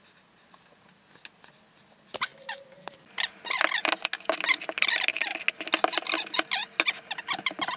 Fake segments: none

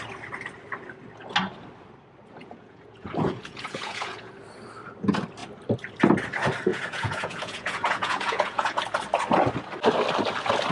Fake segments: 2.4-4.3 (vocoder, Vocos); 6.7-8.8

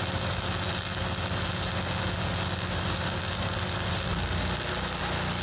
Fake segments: none